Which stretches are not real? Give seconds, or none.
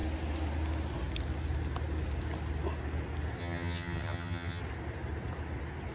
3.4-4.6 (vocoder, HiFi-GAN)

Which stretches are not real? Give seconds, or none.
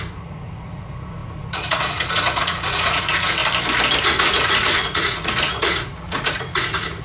0.0-3.4 (vocoder, Vocos); 4.0-7.0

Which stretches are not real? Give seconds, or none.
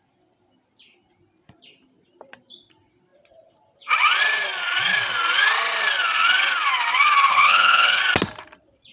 7.3-8.0 (codec, HILCodec)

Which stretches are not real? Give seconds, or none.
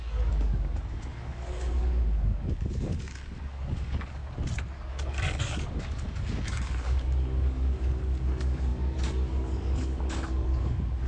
0.0-4.2 (codec, DAC); 4.9-11.1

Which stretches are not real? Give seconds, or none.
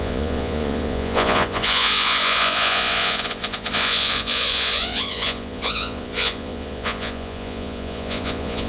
0.0-8.7 (vocoder, Vocos)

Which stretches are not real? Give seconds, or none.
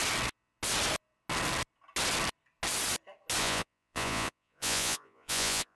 3.4-5.7 (vocoder, Vocos)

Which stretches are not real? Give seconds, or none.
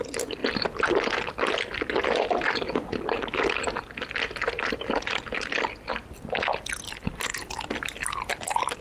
0.4-2.4 (vocoder, BigVGAN v2); 5.9-7.3